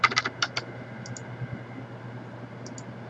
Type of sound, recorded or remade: recorded